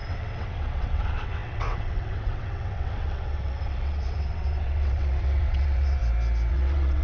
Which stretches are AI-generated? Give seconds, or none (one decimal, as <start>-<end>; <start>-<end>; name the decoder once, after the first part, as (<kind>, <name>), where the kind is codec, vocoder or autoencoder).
0.0-6.0 (vocoder, WaveNeXt); 6.5-7.0